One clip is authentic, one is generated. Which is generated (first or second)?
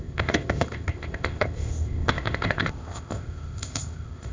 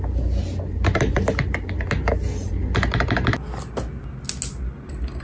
first